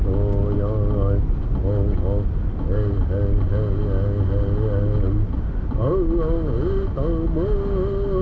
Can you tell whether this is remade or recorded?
recorded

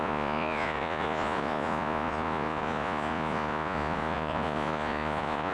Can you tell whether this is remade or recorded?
remade